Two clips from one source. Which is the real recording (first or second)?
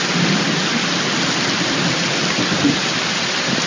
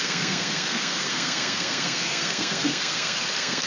first